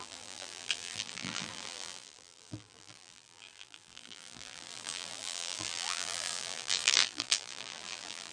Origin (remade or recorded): remade